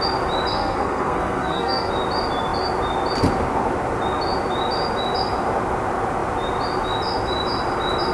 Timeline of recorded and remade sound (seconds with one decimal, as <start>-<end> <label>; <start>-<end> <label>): 0.0-0.5 recorded; 0.5-1.9 remade; 1.9-8.1 recorded